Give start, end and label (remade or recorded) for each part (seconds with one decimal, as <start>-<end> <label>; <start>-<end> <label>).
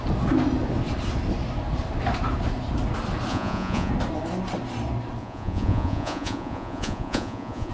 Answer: 0.0-3.3 recorded; 3.3-3.9 remade; 3.9-5.2 recorded; 5.2-7.7 remade